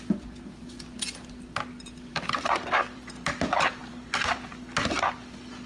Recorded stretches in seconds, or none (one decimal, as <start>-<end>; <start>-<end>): 0.0-2.1; 3.3-3.8; 4.6-5.7